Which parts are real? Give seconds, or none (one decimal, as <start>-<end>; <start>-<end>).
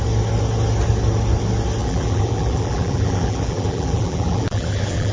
0.0-1.8